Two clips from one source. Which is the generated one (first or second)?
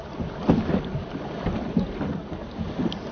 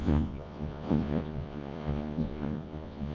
second